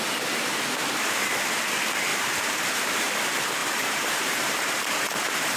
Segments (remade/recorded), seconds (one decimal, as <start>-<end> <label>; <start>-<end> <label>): 0.0-2.1 recorded; 2.1-2.9 remade; 2.9-3.6 recorded; 3.6-5.6 remade